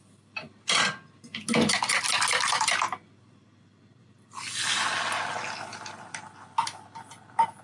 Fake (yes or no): no